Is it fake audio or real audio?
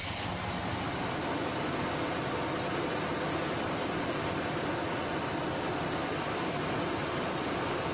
real